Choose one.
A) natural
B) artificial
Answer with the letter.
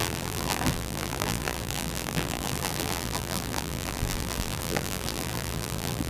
B